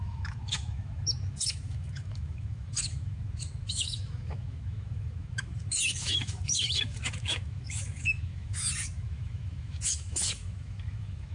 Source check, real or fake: fake